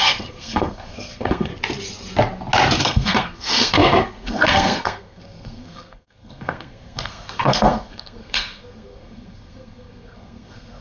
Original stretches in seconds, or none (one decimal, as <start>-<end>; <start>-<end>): 1.5-2.8